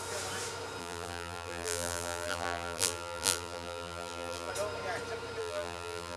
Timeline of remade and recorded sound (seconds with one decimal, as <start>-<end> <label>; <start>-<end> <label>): 0.0-0.8 recorded; 0.8-4.5 remade; 4.5-5.4 recorded; 5.4-6.2 remade